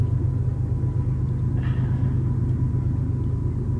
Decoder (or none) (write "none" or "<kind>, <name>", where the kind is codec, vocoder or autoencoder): none